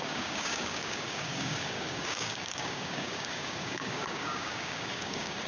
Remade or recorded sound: remade